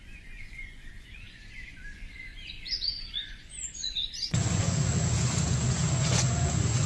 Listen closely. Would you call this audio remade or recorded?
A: remade